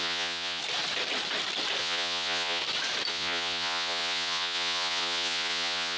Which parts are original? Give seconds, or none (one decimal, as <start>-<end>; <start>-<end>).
0.6-1.8; 2.6-3.1